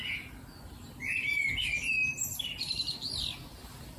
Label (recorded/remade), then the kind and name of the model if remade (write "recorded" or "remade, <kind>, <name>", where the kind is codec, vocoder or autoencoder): recorded